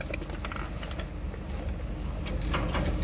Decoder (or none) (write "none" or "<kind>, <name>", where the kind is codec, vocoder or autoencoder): none